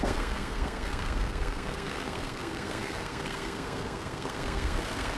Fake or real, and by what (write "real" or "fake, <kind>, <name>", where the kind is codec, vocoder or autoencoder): fake, codec, SNAC